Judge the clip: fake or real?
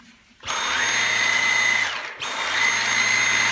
real